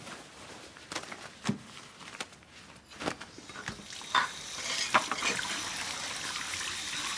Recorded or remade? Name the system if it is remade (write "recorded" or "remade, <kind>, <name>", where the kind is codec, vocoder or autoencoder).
recorded